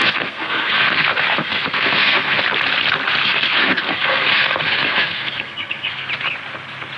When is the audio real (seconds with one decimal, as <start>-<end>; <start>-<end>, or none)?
2.4-3.2; 6.1-7.0